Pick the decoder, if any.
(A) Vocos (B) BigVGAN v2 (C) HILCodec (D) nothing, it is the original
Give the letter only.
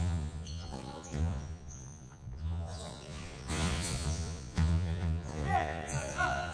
A